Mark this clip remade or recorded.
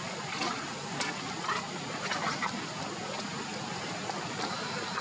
recorded